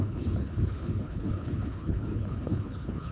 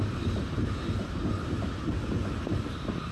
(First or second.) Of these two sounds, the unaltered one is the second